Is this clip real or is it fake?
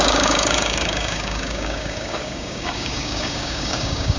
fake